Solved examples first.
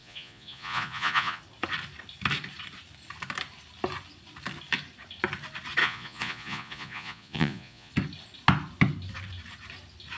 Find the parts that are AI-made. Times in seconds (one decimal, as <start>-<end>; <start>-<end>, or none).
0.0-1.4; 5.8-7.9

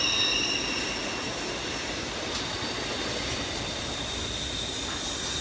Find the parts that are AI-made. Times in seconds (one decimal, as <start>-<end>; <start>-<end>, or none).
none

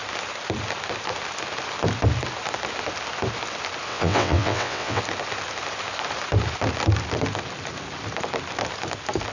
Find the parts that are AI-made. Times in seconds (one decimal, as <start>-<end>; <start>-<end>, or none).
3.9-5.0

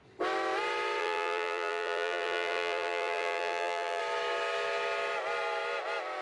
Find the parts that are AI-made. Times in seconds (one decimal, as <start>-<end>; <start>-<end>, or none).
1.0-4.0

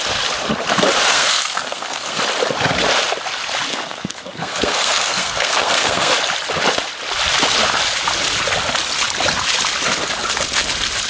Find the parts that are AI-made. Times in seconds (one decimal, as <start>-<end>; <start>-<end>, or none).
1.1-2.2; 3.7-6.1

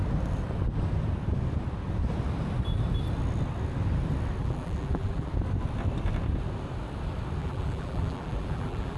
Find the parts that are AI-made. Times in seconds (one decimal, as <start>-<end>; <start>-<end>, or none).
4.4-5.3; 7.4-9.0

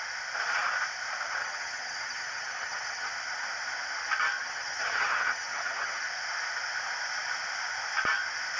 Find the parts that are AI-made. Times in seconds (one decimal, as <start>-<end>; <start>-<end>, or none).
1.4-3.1; 4.4-6.0